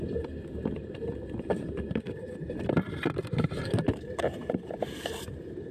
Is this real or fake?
fake